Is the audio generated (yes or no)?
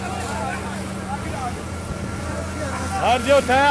no